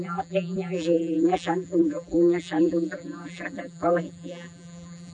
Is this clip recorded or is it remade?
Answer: remade